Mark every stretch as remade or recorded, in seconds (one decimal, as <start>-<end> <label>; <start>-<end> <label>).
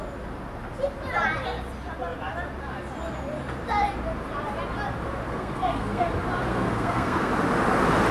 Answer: 0.0-5.3 recorded; 5.3-6.1 remade; 6.1-6.5 recorded; 6.5-7.3 remade; 7.3-8.1 recorded